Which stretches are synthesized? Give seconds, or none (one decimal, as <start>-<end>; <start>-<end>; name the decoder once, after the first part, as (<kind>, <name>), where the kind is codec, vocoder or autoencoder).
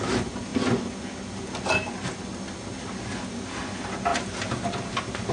4.1-5.3 (vocoder, BigVGAN v2)